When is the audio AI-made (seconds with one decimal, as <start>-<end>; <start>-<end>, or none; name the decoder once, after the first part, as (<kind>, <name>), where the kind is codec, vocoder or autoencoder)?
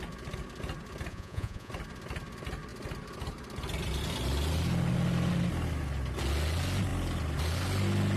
1.1-1.7 (vocoder, Vocos)